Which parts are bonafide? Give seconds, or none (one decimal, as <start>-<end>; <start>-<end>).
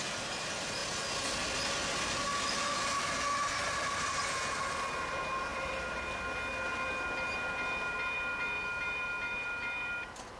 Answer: 0.0-5.5; 6.2-10.4